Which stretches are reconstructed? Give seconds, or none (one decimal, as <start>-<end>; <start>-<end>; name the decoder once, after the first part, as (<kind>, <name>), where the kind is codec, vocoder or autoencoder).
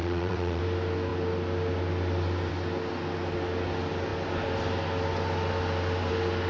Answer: 0.0-0.6 (vocoder, Vocos)